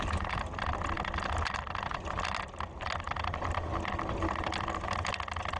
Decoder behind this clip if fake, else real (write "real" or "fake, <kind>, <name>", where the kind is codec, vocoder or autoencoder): real